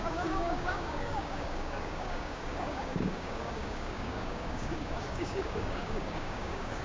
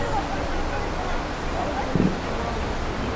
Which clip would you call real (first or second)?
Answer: second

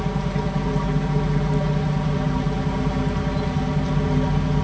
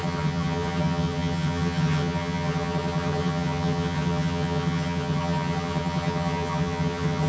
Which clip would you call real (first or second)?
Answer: first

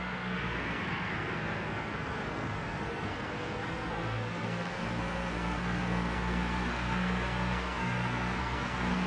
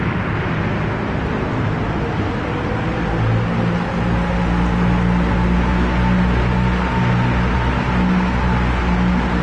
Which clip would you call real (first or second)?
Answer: second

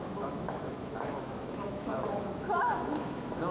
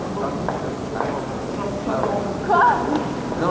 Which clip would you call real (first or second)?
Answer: second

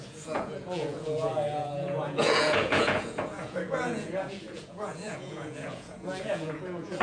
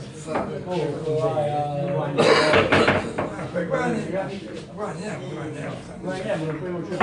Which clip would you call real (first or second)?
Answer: second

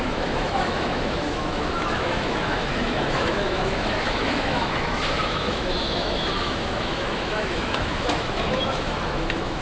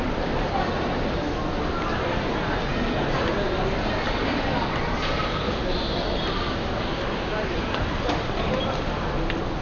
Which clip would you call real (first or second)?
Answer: second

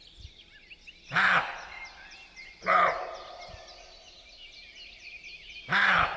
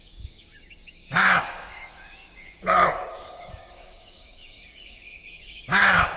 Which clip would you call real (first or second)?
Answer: first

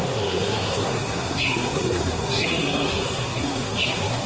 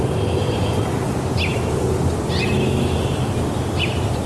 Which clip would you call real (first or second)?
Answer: second